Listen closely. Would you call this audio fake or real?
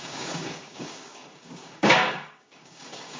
fake